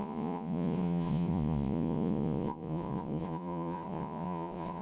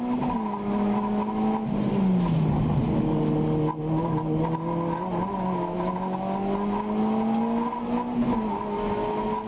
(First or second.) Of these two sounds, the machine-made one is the first